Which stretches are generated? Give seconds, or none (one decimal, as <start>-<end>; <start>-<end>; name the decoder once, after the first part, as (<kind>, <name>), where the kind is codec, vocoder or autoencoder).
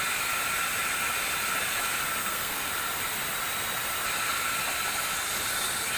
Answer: 2.2-2.7 (codec, SNAC)